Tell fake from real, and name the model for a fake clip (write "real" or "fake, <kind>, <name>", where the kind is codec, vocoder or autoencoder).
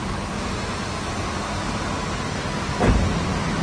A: real